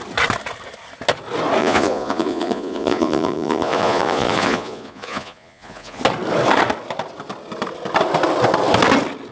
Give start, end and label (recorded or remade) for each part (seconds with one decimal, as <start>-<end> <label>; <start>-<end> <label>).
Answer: 0.0-1.6 recorded; 1.6-6.0 remade; 6.0-9.3 recorded